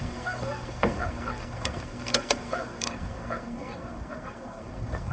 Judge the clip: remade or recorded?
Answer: remade